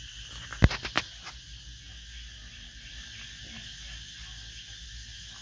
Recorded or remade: recorded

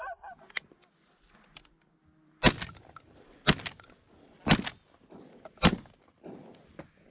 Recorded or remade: recorded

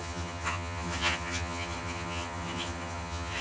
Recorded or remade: remade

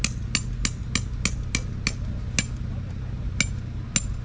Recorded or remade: recorded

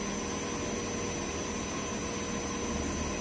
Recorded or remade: recorded